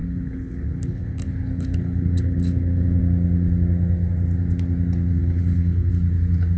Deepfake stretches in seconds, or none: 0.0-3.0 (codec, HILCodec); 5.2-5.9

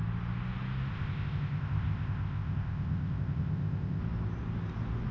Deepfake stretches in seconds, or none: 0.9-4.0 (codec, ZipCodec)